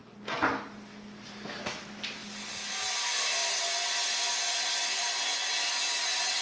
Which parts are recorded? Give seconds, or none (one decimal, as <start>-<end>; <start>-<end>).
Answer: 0.0-6.4